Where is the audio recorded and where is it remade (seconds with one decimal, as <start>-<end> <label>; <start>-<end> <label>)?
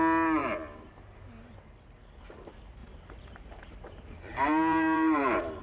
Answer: 0.0-0.4 recorded; 0.4-1.0 remade; 1.0-2.8 recorded; 2.8-5.6 remade